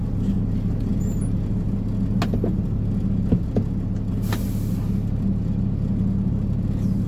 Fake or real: real